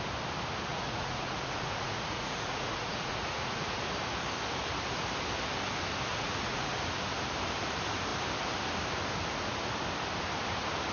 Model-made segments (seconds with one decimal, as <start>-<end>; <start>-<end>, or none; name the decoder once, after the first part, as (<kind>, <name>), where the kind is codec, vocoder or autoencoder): 0.7-3.8 (vocoder, Vocos); 6.1-6.7